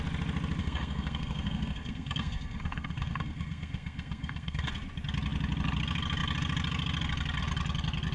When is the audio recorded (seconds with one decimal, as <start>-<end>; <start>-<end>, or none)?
0.0-0.6; 4.7-8.1